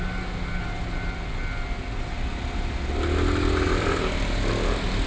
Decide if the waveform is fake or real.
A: real